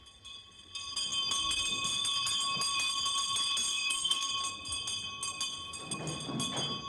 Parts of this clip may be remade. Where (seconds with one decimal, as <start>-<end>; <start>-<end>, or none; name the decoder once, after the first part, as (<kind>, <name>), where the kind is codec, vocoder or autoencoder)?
3.7-4.3 (codec, SNAC)